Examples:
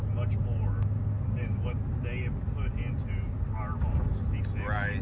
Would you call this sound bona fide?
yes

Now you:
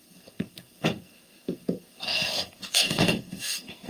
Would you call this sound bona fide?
no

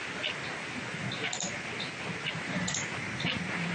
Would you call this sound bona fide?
yes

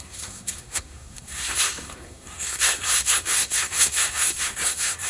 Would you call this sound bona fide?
no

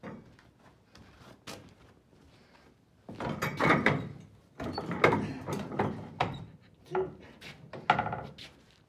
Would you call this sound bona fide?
yes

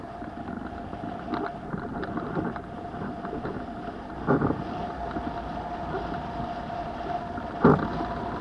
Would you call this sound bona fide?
yes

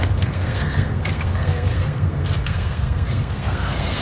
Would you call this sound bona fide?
no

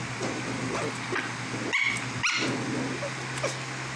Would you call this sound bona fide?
yes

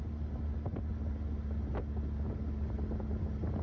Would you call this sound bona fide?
yes